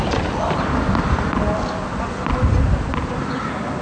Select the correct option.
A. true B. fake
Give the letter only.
A